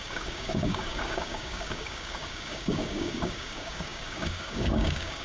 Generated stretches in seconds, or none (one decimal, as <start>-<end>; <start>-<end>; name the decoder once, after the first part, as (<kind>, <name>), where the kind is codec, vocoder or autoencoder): 0.0-5.2 (codec, DAC)